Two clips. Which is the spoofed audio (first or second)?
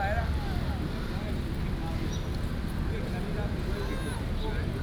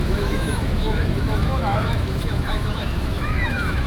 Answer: second